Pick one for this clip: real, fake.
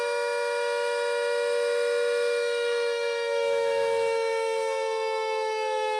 fake